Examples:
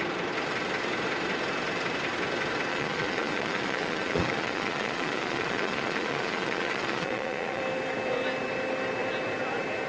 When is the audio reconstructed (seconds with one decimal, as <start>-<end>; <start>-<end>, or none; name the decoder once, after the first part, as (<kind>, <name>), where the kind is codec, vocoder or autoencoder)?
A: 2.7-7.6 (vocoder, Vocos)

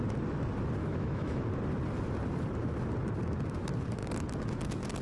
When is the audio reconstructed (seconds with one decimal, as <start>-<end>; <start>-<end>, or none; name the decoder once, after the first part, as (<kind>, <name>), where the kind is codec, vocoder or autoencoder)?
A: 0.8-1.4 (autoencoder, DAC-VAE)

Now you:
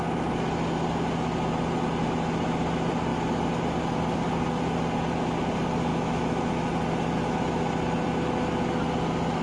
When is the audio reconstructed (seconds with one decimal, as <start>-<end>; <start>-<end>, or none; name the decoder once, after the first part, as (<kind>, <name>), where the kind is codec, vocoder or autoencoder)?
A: 5.9-6.7 (autoencoder, DAC-VAE)

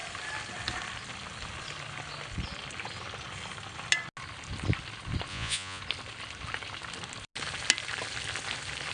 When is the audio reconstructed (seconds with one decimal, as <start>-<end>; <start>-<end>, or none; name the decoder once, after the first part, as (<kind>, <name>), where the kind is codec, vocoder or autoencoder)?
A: 5.3-5.8 (vocoder, Vocos)

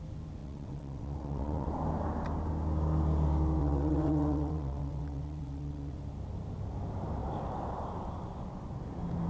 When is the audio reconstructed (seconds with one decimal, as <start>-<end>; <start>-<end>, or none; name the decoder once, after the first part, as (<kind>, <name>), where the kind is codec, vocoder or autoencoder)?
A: 0.4-1.7 (vocoder, WaveNeXt); 3.6-6.0

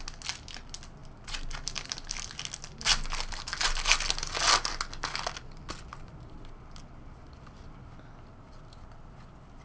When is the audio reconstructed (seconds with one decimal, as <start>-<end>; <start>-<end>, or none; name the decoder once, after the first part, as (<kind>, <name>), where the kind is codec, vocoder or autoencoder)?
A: none